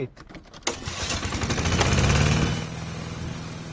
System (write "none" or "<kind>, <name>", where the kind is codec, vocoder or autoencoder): none